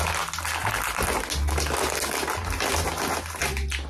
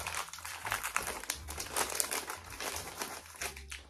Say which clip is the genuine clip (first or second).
first